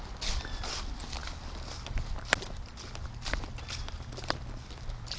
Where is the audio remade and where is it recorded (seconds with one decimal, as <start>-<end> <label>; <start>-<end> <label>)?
0.0-5.2 recorded